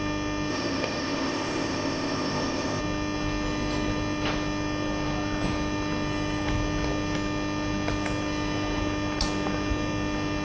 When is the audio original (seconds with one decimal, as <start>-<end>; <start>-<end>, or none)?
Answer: 0.0-0.5; 2.8-10.4

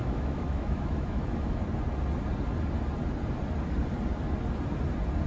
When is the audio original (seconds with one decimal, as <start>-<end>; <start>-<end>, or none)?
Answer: 1.6-5.3

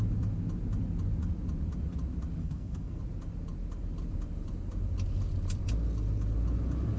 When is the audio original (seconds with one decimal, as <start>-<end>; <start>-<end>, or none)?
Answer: 0.0-2.4; 3.0-7.0

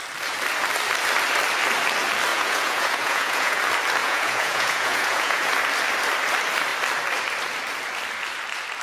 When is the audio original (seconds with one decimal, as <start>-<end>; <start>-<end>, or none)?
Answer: 0.0-2.3; 3.6-4.0; 5.5-8.8

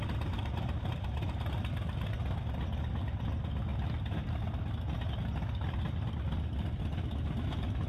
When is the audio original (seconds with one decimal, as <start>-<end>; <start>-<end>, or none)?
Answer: 0.0-7.9

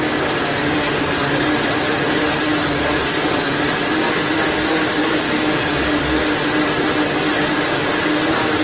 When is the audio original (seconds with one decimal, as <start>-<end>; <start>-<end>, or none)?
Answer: 0.0-8.6